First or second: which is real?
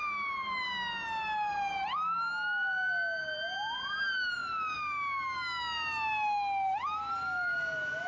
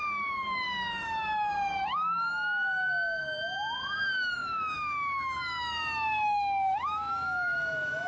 first